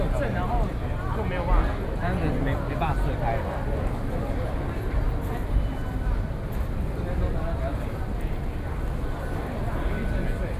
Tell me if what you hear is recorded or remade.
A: recorded